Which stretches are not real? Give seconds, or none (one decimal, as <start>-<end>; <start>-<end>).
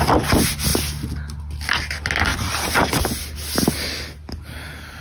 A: 0.7-1.4